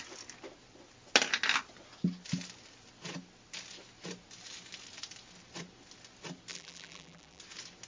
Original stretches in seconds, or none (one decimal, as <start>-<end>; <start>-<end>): 0.0-6.5; 7.4-7.9